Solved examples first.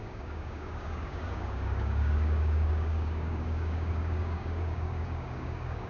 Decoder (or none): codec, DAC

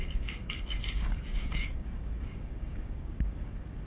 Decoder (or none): codec, DAC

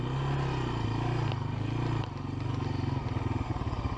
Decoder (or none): none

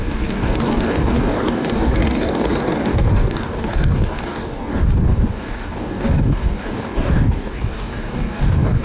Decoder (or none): codec, DAC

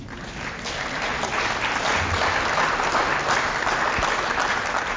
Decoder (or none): none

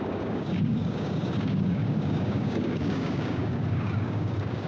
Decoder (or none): codec, DAC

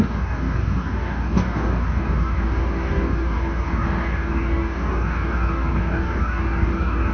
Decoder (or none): codec, DAC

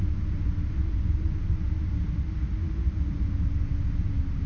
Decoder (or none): none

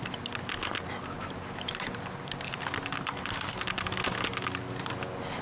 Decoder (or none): none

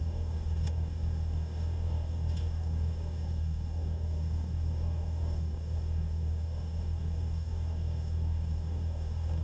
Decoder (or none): codec, DAC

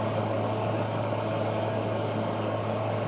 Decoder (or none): codec, DAC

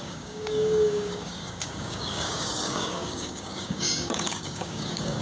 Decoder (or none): codec, DAC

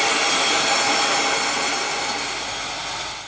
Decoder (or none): none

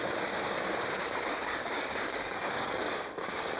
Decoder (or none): codec, DAC